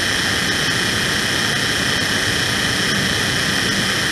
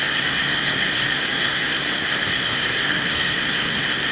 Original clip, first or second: first